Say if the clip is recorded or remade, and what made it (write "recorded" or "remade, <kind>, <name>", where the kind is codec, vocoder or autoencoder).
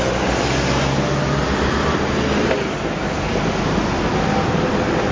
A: recorded